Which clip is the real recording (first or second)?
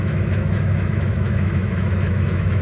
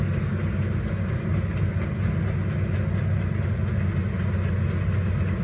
second